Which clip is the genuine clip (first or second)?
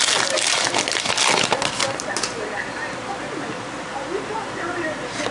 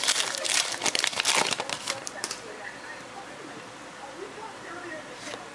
first